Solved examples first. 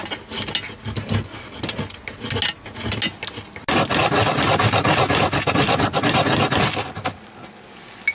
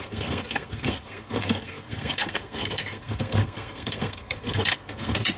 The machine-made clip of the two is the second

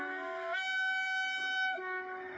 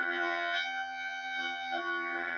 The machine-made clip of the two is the second